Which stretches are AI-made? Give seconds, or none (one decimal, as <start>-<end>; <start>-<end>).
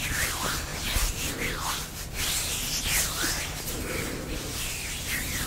0.0-0.7; 3.7-5.5